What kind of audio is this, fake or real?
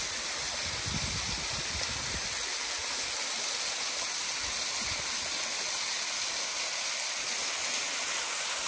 real